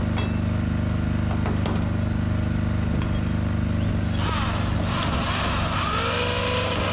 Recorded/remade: recorded